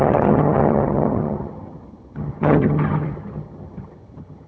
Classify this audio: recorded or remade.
remade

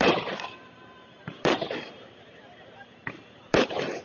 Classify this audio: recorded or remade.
remade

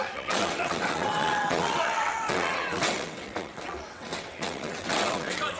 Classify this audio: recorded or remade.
remade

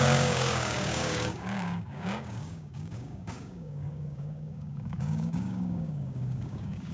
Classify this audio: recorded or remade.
remade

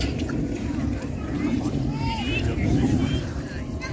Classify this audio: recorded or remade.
remade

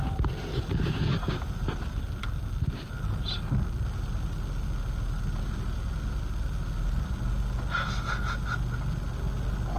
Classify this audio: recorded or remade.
recorded